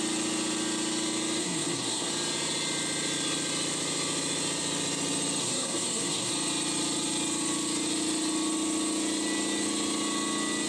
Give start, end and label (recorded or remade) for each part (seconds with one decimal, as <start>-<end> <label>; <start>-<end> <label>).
0.0-1.4 recorded; 1.4-2.1 remade; 2.1-5.4 recorded; 5.4-6.3 remade; 6.3-10.7 recorded